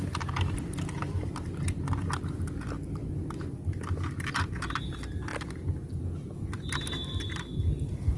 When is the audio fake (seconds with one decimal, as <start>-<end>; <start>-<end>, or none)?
none